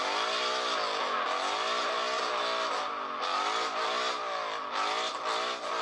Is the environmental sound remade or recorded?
recorded